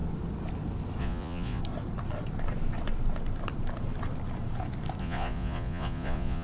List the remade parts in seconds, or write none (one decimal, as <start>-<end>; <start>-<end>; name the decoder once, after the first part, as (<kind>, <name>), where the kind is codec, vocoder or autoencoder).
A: 1.0-1.6 (vocoder, Vocos); 5.0-6.4